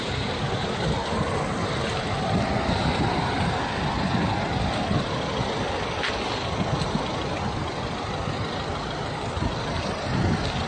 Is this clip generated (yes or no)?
no